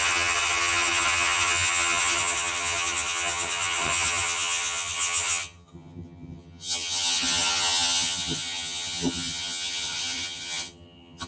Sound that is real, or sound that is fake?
fake